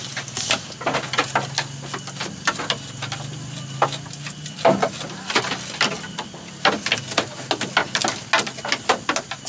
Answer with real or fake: real